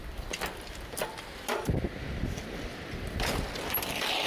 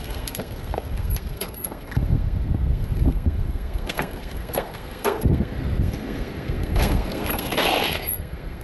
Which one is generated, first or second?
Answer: second